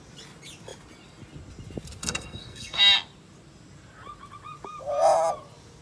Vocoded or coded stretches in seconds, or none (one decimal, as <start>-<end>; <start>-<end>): 2.0-2.8